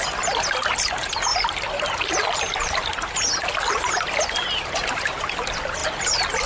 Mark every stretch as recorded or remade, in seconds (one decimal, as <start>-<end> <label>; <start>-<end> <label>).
0.0-6.5 recorded